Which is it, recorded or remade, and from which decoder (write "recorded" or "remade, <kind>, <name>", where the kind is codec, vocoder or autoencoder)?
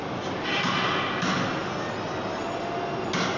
recorded